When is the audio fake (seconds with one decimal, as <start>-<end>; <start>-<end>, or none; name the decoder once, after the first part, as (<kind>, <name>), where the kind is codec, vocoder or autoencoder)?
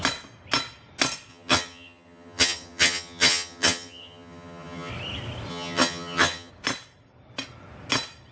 1.3-4.9 (vocoder, HiFi-GAN); 5.5-6.5